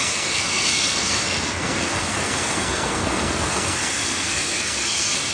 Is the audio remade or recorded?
remade